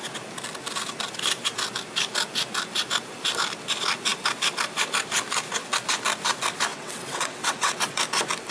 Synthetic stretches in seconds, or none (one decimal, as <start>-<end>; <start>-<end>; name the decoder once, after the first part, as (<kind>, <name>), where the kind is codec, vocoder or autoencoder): 6.7-8.0 (vocoder, WaveNeXt)